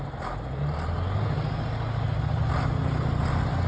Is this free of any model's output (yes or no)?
yes